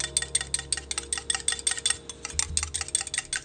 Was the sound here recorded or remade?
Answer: recorded